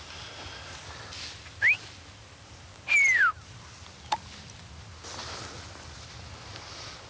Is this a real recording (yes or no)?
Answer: yes